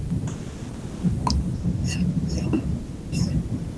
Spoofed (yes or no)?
no